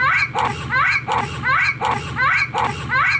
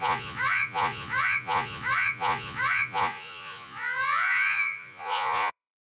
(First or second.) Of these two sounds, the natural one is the first